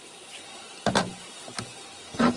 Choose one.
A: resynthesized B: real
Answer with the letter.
B